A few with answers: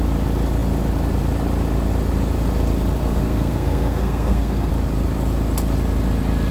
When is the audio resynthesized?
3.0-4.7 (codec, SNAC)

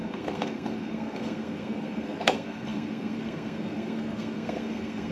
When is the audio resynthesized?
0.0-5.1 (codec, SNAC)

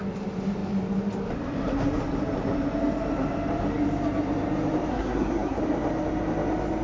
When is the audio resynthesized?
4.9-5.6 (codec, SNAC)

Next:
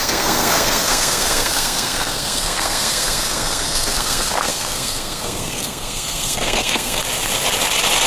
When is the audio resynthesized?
0.0-7.0 (codec, SNAC)

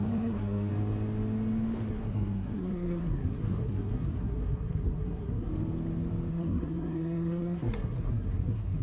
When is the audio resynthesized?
0.0-0.7 (codec, SNAC); 1.9-5.5; 6.3-8.8